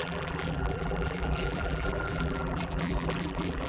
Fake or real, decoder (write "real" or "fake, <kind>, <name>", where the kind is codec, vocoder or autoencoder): fake, vocoder, BigVGAN v2